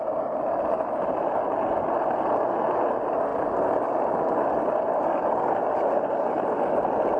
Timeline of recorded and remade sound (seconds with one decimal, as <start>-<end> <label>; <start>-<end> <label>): 0.0-7.2 recorded